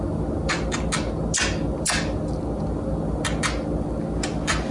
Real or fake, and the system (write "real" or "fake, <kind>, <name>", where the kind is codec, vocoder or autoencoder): real